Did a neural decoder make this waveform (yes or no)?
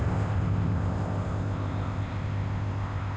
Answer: yes